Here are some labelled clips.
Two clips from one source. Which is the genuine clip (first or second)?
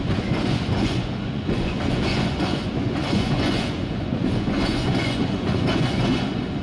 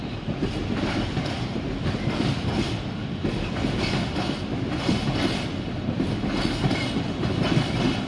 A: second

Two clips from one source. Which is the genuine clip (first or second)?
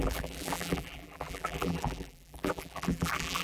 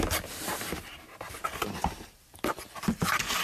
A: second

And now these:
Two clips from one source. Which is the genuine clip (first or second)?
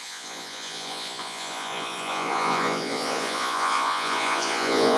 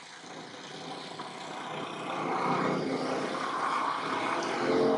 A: second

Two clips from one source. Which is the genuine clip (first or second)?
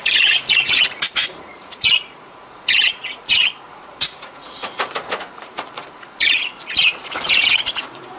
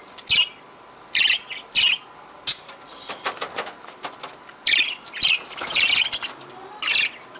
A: second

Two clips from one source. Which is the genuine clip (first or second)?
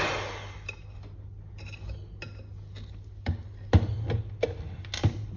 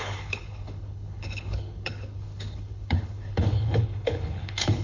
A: first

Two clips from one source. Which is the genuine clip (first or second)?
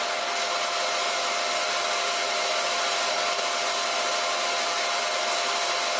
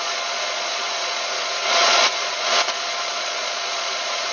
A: first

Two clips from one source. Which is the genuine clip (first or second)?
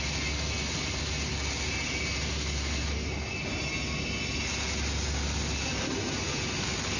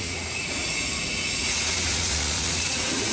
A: first